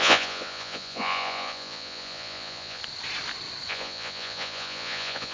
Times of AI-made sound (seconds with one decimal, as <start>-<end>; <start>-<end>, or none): 0.0-2.8; 3.7-5.3

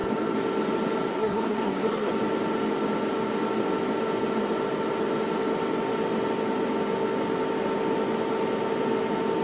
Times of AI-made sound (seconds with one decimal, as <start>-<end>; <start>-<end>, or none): 1.1-2.1

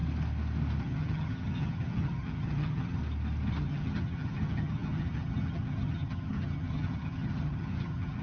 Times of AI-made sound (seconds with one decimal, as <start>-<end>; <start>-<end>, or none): 0.8-3.0; 3.6-8.2

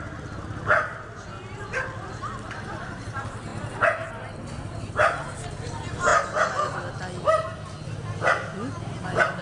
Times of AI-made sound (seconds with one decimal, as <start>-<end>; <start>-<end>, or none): none

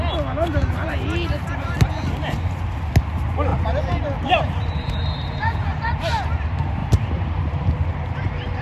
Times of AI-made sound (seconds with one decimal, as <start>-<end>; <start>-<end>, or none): 3.5-4.9; 6.8-7.7

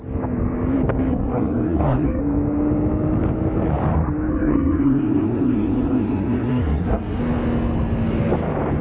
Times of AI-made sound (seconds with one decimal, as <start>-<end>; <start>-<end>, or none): 1.1-2.2; 4.3-7.2

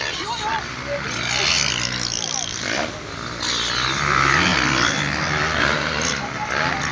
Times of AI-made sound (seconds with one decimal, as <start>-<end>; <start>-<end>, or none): none

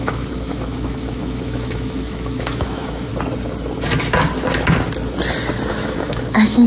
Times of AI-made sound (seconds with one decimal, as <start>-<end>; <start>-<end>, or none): 0.0-3.1; 5.7-6.7